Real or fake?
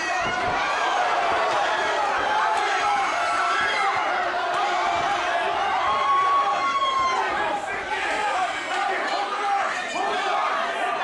fake